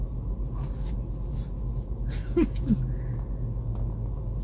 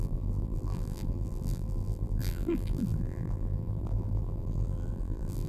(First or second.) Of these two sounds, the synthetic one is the second